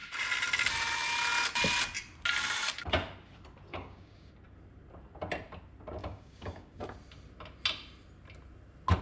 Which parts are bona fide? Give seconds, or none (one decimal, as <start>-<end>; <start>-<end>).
0.0-3.7; 4.3-6.0; 6.8-9.0